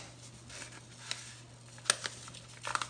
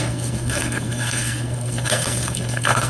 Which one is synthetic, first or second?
second